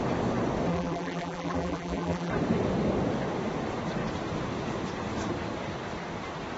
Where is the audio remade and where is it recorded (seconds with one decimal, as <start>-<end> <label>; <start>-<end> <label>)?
0.0-0.7 recorded; 0.7-2.3 remade; 2.3-6.6 recorded